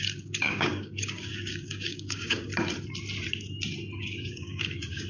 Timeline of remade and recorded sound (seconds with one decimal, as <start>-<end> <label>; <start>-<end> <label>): 0.0-2.5 remade; 2.5-4.0 recorded; 4.0-5.1 remade